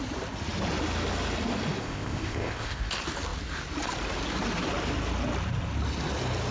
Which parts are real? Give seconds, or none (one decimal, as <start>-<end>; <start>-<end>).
0.0-1.8; 2.8-6.5